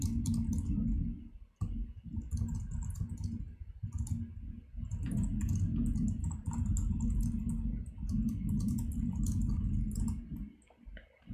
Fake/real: real